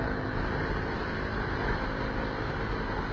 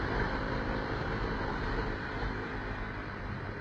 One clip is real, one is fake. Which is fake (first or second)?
second